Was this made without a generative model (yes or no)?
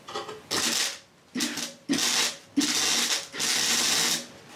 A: yes